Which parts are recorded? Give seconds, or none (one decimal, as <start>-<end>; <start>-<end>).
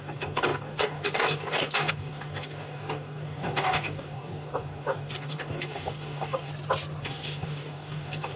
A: 6.5-7.0